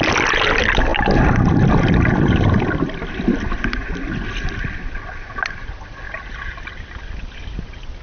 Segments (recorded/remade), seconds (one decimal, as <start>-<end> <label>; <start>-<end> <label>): 0.0-8.0 recorded